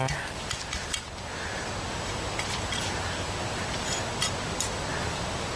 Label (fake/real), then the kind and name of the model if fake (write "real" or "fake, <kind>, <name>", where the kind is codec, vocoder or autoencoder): real